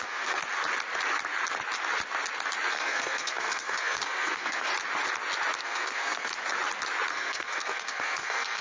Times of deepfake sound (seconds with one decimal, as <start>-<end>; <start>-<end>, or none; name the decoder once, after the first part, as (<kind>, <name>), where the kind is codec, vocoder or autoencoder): 0.0-0.4 (codec, SNAC); 2.7-4.7; 5.6-6.3; 7.1-8.6